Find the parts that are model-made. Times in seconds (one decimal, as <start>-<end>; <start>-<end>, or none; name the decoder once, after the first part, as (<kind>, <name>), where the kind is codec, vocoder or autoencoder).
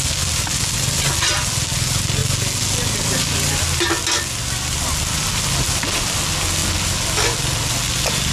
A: none